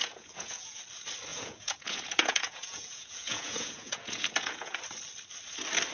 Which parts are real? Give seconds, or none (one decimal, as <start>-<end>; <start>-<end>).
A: 0.8-1.3; 4.8-5.9

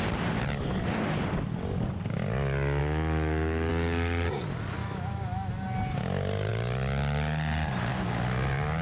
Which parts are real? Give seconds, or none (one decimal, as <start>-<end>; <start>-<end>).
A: 0.0-2.8; 3.7-4.8; 5.5-8.8

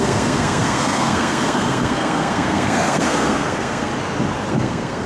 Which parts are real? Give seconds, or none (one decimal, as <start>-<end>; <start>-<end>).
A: 3.9-4.5

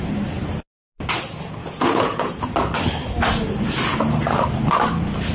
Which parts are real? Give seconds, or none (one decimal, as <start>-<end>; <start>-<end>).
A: 0.0-1.6; 2.5-5.3

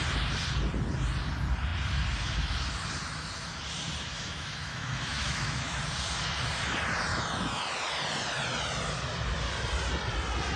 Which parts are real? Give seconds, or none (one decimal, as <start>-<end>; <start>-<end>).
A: 0.0-4.1; 5.8-7.1; 7.6-10.6